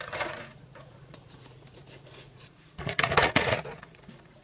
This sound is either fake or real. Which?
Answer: fake